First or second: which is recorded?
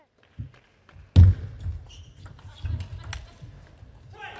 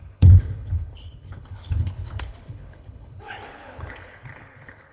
first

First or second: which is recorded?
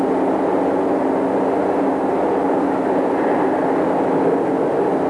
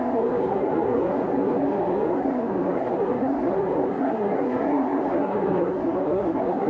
first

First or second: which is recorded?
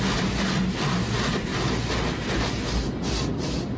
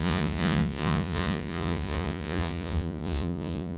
first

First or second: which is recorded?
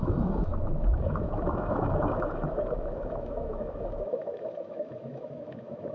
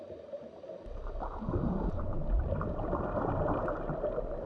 second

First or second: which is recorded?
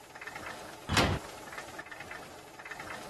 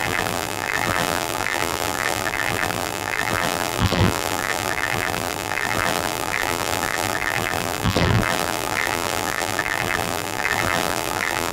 first